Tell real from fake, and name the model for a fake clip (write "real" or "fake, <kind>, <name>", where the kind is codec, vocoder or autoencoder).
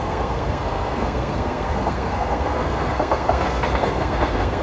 fake, codec, SNAC